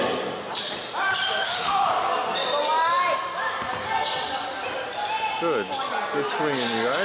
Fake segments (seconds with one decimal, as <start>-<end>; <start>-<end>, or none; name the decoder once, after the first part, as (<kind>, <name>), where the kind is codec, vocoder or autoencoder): 1.4-1.9 (autoencoder, DAC-VAE)